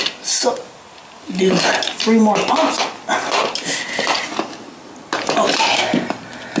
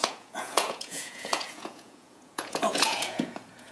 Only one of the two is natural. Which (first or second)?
first